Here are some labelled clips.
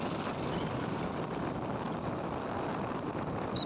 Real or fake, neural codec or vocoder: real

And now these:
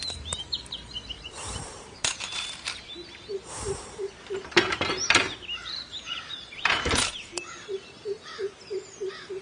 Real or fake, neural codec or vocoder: fake, vocoder, BigVGAN v2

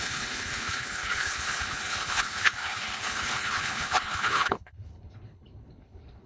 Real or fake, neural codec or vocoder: fake, codec, HILCodec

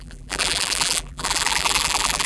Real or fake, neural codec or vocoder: fake, vocoder, BigVGAN v2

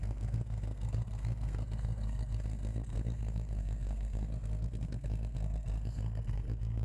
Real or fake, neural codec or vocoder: fake, codec, SNAC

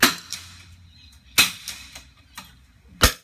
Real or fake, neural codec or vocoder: real